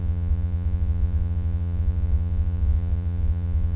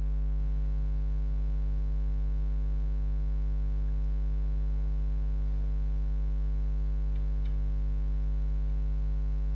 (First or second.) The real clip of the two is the second